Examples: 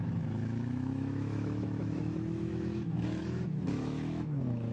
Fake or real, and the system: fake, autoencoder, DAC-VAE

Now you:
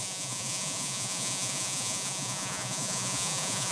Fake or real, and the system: fake, vocoder, Vocos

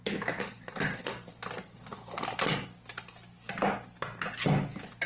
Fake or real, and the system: real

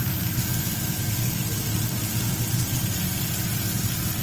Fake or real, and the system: real